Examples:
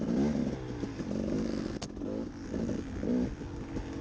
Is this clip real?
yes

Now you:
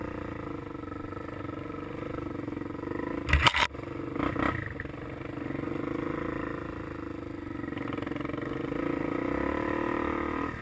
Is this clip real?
yes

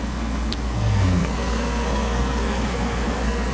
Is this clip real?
no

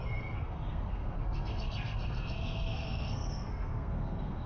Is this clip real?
no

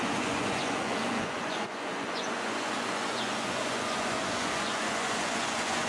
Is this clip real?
no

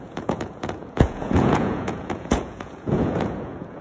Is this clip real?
no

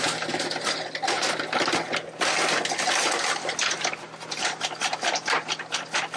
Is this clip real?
yes